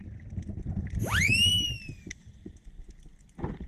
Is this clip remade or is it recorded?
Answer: recorded